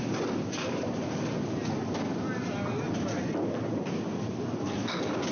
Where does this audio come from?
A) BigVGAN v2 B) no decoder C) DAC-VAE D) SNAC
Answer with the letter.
B